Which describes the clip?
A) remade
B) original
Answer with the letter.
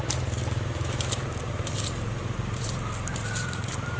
B